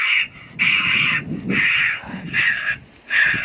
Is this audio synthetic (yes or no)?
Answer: no